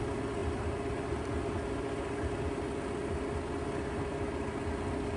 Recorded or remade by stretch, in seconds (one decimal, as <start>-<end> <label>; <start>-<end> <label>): 0.0-5.2 recorded